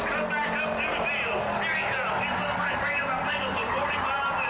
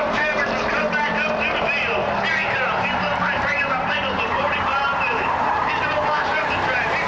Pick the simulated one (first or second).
second